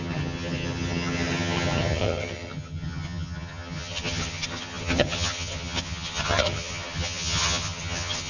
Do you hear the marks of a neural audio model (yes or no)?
yes